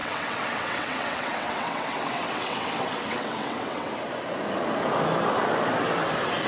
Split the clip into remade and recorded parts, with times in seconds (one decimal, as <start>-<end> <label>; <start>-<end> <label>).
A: 0.0-3.9 remade; 3.9-6.5 recorded